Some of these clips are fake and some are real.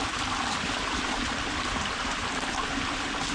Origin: real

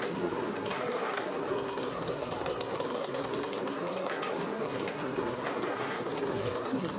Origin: fake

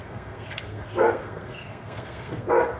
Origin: fake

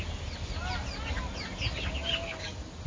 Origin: real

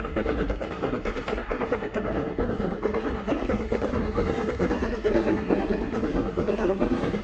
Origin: fake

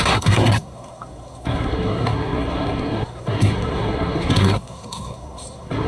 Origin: fake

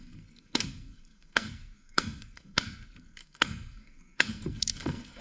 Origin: fake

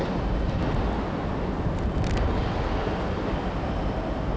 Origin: real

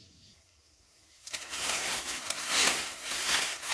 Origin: fake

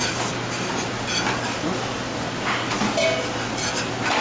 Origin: real